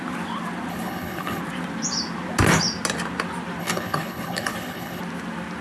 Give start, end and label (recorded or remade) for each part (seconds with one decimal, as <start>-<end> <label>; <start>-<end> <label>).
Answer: 0.0-0.7 recorded; 0.7-1.4 remade; 1.4-3.6 recorded; 3.6-5.0 remade; 5.0-5.6 recorded